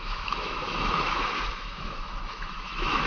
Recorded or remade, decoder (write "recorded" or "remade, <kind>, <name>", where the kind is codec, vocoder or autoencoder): remade, autoencoder, DAC-VAE